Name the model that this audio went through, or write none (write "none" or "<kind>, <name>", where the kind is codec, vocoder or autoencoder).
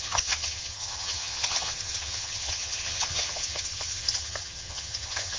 vocoder, HiFi-GAN